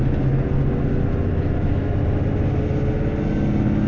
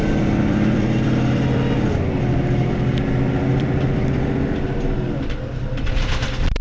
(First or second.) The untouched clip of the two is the first